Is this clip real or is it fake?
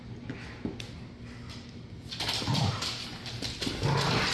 real